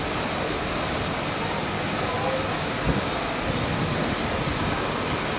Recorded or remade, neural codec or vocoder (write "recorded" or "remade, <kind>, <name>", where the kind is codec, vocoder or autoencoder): recorded